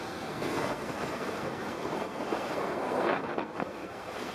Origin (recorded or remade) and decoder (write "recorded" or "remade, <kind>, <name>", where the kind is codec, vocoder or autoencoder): remade, codec, SNAC